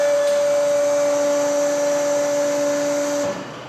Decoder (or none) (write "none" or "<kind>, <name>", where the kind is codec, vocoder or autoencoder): none